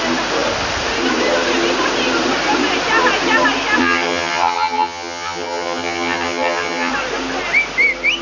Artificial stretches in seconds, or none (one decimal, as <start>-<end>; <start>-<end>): 3.8-6.9